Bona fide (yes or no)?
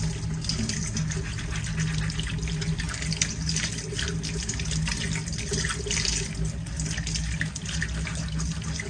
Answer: yes